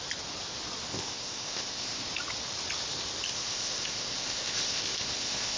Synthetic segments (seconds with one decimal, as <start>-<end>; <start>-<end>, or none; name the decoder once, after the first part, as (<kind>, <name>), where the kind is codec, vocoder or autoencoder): 0.9-2.0 (codec, ZipCodec); 3.3-5.6